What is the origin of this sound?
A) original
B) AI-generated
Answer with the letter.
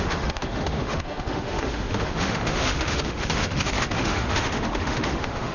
B